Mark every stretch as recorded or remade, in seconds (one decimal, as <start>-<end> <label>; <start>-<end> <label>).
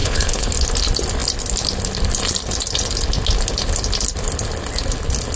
0.0-0.5 remade; 0.5-5.4 recorded